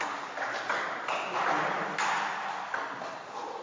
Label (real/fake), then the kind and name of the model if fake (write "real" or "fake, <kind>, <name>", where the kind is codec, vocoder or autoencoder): real